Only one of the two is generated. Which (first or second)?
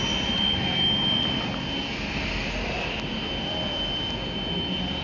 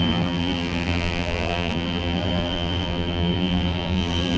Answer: second